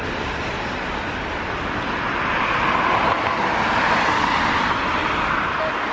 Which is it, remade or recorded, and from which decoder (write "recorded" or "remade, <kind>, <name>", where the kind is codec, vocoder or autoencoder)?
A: recorded